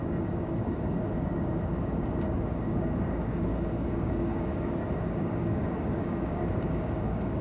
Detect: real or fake fake